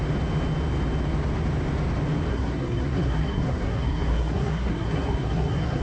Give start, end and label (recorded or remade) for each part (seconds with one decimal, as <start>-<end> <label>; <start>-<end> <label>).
0.0-2.3 recorded; 2.3-5.8 remade